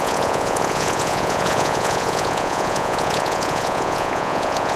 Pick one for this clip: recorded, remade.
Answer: remade